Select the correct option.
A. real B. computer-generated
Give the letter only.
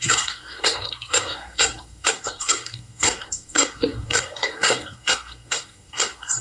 B